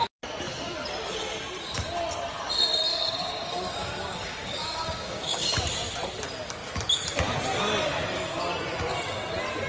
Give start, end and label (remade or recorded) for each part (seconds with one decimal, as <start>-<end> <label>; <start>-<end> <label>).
0.0-2.9 recorded; 2.9-5.6 remade; 5.6-9.7 recorded